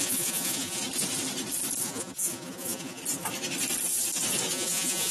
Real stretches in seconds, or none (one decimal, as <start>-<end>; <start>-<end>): 0.8-1.8; 3.0-4.5